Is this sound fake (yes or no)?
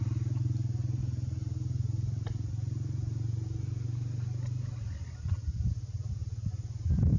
no